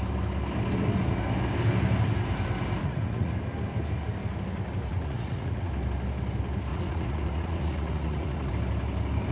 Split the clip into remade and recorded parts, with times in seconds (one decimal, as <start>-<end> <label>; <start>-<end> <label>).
0.0-2.8 recorded; 2.8-3.3 remade; 3.3-4.9 recorded; 4.9-5.7 remade; 5.7-6.7 recorded; 6.7-8.5 remade; 8.5-9.3 recorded